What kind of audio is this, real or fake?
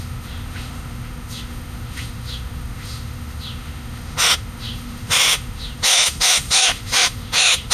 fake